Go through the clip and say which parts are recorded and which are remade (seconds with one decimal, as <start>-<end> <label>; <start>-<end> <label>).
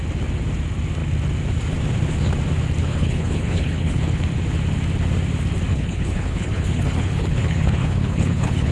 0.0-2.8 recorded; 2.8-4.2 remade; 4.2-5.7 recorded; 5.7-8.7 remade